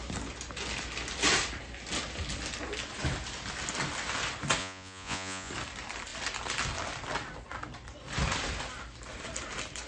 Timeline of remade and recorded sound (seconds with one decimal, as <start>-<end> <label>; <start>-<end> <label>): 0.0-4.6 recorded; 4.6-5.5 remade; 5.5-9.9 recorded

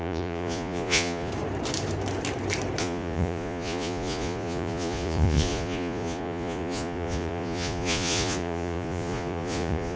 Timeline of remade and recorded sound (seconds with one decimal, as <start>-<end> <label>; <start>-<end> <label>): 0.0-1.3 remade; 1.3-2.8 recorded; 2.8-10.0 remade

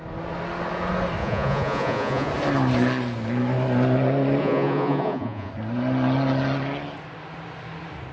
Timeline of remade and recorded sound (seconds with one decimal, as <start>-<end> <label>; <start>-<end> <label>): 0.0-1.2 recorded; 1.2-2.3 remade; 2.3-4.4 recorded; 4.4-5.5 remade; 5.5-8.1 recorded

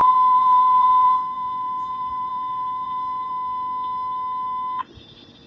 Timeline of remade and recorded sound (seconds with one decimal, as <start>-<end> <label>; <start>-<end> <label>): 0.0-3.3 remade; 3.3-5.5 recorded